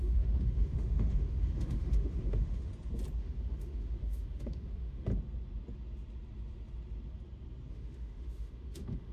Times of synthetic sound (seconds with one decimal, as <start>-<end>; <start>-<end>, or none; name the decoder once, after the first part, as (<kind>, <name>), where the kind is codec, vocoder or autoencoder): 0.0-2.7 (autoencoder, DAC-VAE); 3.2-5.1; 7.7-9.1